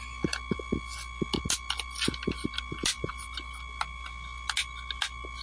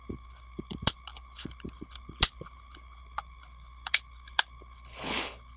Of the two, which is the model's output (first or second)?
second